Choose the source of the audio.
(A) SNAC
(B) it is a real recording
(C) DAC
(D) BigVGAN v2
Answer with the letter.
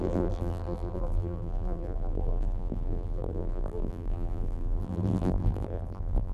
D